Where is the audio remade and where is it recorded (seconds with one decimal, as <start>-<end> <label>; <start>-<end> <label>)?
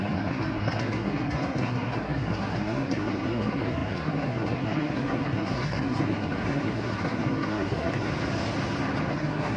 0.0-8.1 remade; 8.1-9.1 recorded; 9.1-9.6 remade